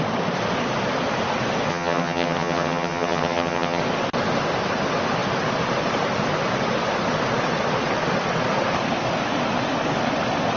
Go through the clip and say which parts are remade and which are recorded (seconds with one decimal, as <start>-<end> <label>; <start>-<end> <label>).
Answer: 0.0-1.7 recorded; 1.7-3.8 remade; 3.8-10.6 recorded